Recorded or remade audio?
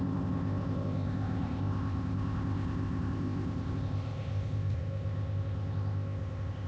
remade